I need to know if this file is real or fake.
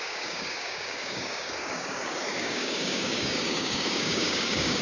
fake